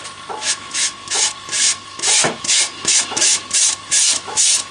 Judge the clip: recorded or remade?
remade